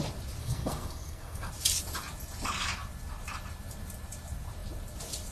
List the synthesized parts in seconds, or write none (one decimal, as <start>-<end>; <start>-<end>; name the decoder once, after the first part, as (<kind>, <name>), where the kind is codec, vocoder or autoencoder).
0.4-1.5 (codec, SNAC)